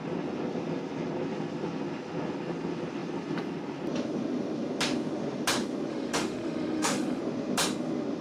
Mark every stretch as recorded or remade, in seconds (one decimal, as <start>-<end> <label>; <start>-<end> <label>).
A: 0.0-5.9 recorded; 5.9-7.2 remade; 7.2-8.2 recorded